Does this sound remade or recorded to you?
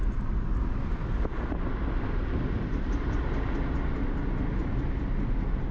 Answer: recorded